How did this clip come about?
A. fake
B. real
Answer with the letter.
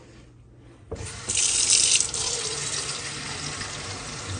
B